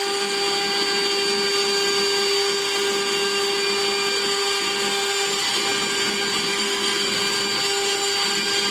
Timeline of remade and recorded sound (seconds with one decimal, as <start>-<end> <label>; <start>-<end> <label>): 0.0-6.5 recorded; 6.5-7.2 remade; 7.2-8.7 recorded